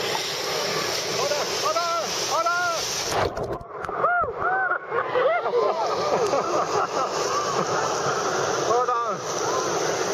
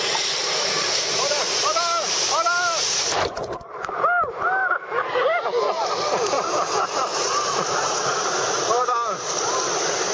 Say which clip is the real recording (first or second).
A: first